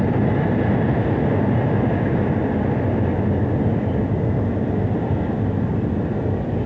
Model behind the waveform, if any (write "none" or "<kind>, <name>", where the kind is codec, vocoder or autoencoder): none